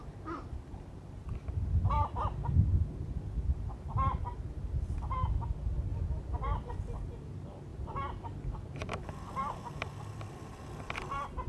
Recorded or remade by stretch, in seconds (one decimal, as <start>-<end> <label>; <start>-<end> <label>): 0.0-11.5 recorded